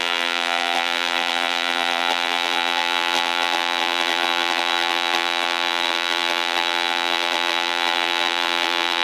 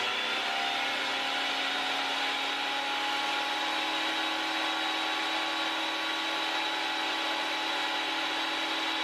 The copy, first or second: first